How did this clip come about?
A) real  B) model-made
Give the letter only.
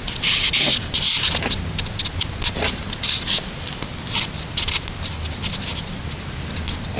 A